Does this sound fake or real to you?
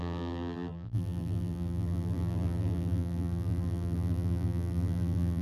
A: fake